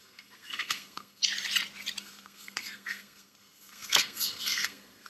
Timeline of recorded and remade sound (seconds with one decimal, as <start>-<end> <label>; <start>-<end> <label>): 0.0-1.2 remade; 1.2-2.0 recorded; 2.0-5.1 remade